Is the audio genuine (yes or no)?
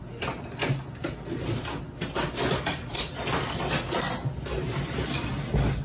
yes